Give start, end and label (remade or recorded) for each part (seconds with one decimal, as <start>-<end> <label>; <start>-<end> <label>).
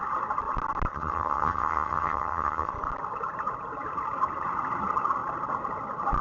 0.0-0.9 recorded; 0.9-2.7 remade; 2.7-6.2 recorded